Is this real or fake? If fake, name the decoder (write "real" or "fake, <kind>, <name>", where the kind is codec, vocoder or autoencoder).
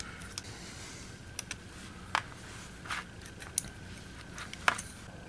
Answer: real